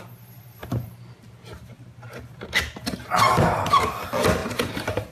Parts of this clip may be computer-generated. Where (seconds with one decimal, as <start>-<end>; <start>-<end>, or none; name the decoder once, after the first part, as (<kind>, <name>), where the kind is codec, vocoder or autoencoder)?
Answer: 0.6-3.7 (vocoder, BigVGAN v2); 4.4-5.1